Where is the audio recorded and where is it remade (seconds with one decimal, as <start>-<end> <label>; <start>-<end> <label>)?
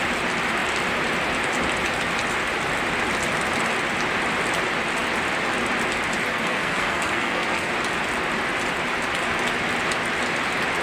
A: 0.0-6.3 recorded; 6.3-7.7 remade; 7.7-10.8 recorded